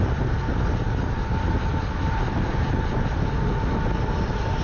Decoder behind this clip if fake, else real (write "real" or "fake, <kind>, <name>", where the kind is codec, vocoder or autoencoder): real